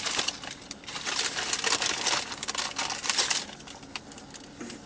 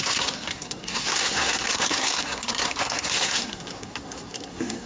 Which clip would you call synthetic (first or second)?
second